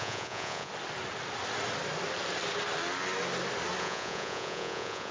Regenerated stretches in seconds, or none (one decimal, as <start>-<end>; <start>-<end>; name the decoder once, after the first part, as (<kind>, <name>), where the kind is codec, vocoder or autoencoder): 0.0-0.7 (vocoder, Vocos); 3.8-5.1